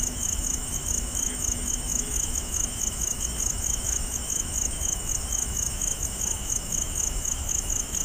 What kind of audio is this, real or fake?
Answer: fake